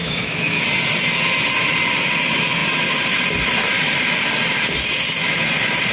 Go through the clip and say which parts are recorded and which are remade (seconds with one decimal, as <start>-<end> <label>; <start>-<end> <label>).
0.0-0.6 remade; 0.6-5.9 recorded